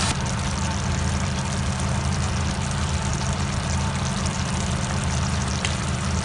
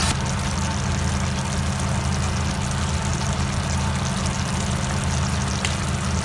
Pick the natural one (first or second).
second